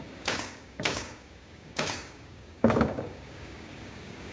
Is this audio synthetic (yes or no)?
yes